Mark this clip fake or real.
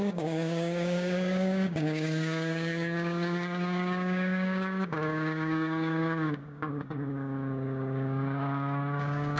fake